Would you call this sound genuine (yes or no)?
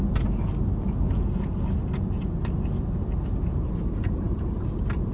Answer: yes